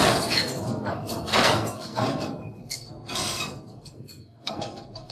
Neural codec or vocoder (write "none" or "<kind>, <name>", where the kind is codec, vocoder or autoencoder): codec, SNAC